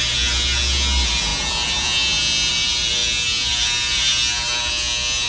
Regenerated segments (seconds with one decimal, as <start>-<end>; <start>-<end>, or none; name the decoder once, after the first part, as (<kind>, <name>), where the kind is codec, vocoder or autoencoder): none